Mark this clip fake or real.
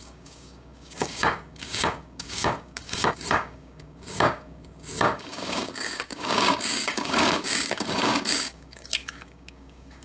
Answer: fake